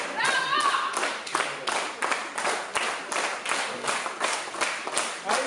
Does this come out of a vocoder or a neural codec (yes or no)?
no